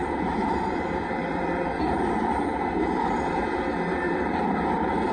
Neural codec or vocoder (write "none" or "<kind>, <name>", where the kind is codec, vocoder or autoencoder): vocoder, BigVGAN v2